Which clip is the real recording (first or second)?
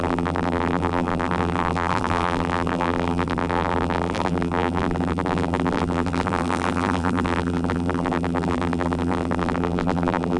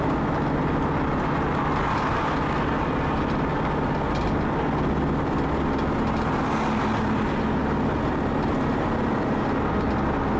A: second